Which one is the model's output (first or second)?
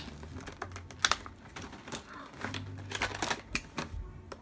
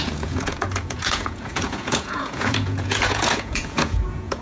second